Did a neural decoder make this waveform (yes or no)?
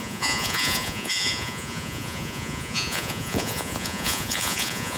yes